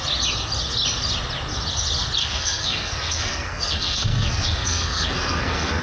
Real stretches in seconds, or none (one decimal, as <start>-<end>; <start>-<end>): 0.0-2.2

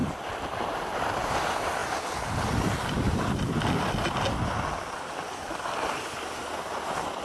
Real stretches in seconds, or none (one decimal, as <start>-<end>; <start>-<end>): 1.3-7.2

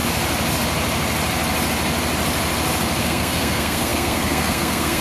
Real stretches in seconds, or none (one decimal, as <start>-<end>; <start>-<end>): 0.0-3.0